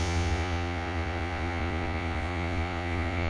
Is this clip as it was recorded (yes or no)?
no